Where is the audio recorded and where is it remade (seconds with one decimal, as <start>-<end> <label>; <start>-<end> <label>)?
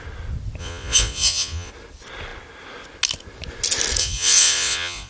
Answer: 0.0-0.6 recorded; 0.6-1.7 remade; 1.7-4.0 recorded; 4.0-5.1 remade